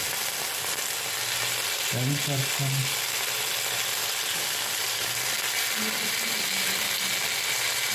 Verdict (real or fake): real